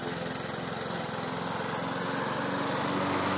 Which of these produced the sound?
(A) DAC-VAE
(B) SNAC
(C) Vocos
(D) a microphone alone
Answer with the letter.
D